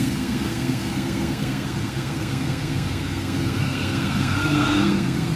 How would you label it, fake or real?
fake